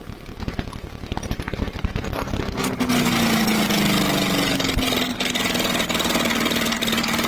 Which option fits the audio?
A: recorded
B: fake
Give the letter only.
A